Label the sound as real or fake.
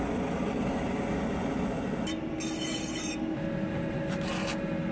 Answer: real